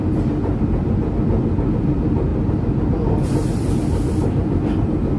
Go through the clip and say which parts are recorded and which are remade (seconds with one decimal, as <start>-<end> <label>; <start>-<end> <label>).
0.0-5.2 recorded